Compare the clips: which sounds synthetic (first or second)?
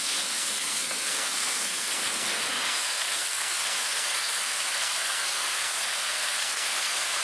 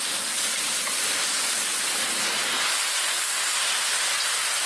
first